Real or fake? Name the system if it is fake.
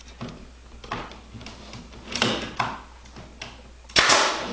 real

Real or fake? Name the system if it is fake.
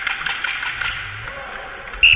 real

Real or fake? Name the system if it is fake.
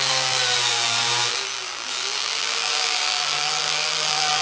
fake, vocoder, BigVGAN v2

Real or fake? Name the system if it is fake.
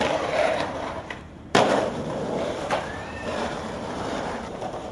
fake, vocoder, BigVGAN v2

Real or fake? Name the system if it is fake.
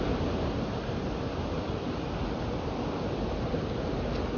real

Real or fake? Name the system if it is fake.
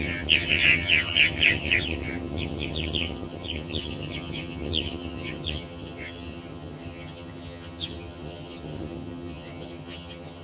fake, vocoder, HiFi-GAN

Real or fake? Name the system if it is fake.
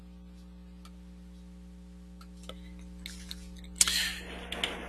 real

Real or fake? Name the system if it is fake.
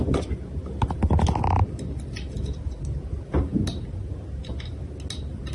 real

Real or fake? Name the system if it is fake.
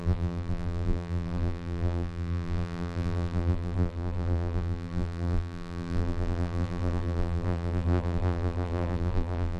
fake, vocoder, BigVGAN v2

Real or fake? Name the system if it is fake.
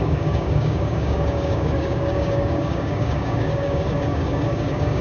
fake, codec, DAC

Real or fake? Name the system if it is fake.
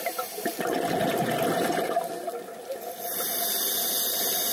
real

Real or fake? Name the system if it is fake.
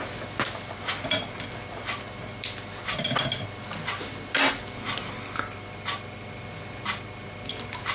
real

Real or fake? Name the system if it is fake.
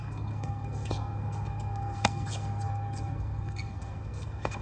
fake, codec, SNAC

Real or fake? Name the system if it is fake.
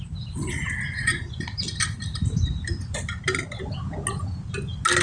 real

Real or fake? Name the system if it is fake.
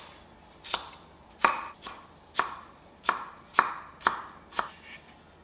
real